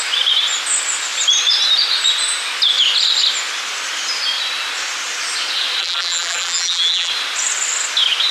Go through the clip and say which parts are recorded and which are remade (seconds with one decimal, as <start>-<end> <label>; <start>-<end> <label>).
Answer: 0.0-5.8 recorded; 5.8-7.1 remade; 7.1-8.3 recorded